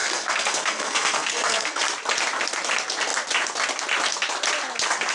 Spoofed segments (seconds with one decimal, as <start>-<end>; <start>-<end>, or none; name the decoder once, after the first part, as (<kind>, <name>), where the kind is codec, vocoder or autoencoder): 0.0-1.8 (codec, SNAC)